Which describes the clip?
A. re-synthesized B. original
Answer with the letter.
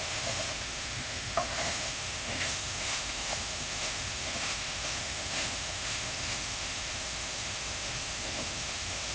A